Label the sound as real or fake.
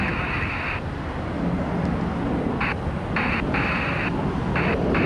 real